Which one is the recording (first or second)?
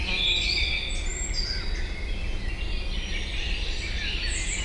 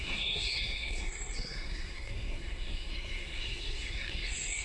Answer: first